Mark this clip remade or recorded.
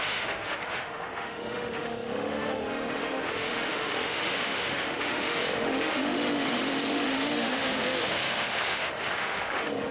remade